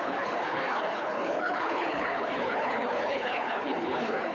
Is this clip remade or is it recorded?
remade